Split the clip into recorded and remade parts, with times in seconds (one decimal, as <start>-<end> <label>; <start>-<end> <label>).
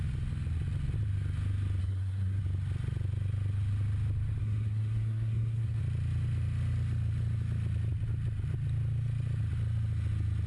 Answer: 0.0-1.8 recorded; 1.8-2.4 remade; 2.4-4.4 recorded; 4.4-5.8 remade; 5.8-10.5 recorded